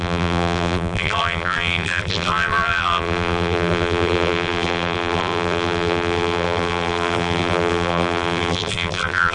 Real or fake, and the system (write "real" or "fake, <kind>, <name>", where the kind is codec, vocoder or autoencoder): fake, vocoder, BigVGAN v2